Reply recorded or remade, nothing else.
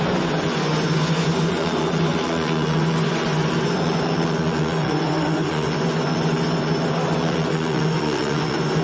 remade